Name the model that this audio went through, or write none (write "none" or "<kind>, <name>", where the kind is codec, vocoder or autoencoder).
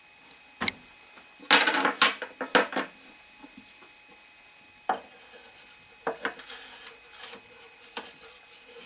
none